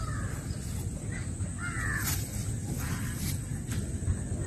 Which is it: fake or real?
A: real